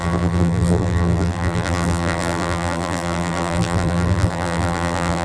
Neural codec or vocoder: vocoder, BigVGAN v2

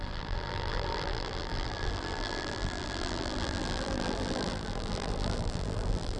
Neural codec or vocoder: vocoder, BigVGAN v2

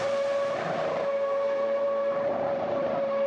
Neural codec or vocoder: vocoder, BigVGAN v2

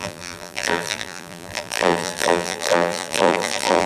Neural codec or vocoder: vocoder, BigVGAN v2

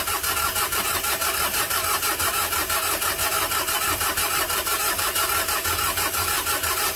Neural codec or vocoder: vocoder, BigVGAN v2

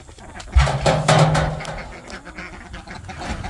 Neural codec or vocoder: none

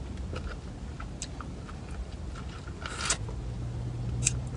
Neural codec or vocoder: none